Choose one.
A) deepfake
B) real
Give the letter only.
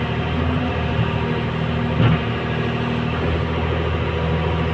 B